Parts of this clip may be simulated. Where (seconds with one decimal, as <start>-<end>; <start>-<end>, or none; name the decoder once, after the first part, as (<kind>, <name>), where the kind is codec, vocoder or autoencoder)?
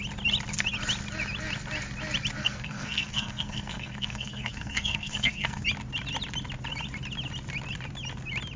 2.4-5.6 (codec, SNAC)